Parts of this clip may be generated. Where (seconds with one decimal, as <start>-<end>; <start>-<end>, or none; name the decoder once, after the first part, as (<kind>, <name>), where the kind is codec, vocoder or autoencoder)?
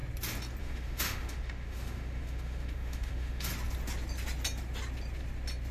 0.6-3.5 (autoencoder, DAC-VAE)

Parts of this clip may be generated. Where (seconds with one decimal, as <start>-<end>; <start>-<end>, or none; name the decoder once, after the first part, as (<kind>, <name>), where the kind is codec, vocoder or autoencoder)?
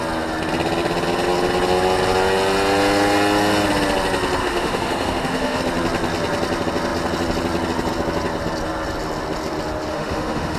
4.4-5.6 (autoencoder, DAC-VAE); 9.9-10.6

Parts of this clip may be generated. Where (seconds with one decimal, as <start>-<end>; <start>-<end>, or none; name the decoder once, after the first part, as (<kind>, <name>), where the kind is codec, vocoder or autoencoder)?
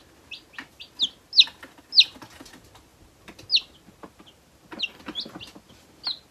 none